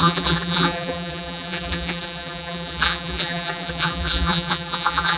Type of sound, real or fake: fake